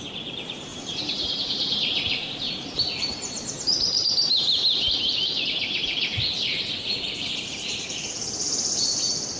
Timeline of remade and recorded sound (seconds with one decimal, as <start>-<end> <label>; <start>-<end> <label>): 0.0-0.7 recorded; 0.7-4.5 remade; 4.5-5.2 recorded; 5.2-8.1 remade; 8.1-9.4 recorded